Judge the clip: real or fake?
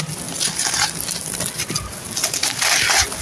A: real